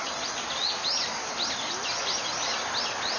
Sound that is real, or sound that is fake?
real